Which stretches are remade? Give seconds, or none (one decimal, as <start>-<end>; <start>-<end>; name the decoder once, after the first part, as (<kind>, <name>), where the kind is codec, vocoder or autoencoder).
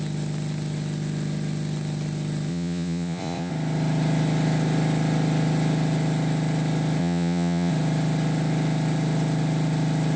2.5-3.5 (vocoder, Vocos); 7.0-7.7